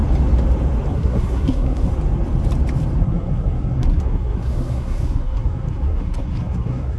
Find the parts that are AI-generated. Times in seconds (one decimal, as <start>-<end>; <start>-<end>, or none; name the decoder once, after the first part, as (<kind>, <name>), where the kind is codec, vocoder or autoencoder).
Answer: 0.9-1.9 (codec, SNAC); 3.0-7.0